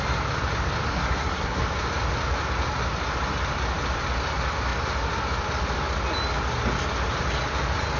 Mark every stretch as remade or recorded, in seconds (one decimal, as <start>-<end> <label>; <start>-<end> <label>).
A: 0.0-0.9 recorded; 0.9-1.6 remade; 1.6-8.0 recorded